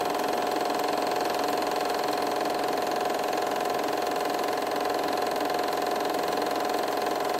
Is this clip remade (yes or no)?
no